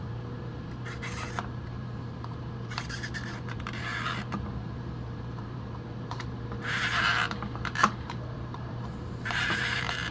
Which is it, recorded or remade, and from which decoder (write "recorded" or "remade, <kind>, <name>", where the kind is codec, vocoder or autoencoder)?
remade, vocoder, BigVGAN v2